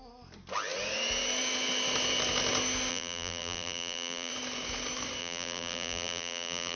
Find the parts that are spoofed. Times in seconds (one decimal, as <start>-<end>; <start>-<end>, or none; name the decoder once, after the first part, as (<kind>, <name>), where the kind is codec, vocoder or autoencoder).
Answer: 2.9-4.3 (vocoder, BigVGAN v2); 5.2-6.8